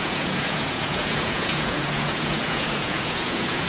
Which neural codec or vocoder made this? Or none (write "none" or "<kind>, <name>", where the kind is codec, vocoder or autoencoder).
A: vocoder, Vocos